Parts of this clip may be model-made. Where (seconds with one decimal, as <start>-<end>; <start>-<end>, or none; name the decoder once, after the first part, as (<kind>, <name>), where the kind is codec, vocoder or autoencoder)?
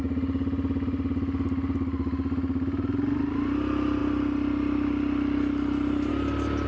none